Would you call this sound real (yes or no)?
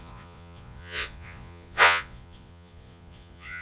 no